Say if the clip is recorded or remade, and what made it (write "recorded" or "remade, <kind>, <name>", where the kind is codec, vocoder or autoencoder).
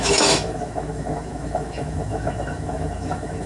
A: remade, autoencoder, DAC-VAE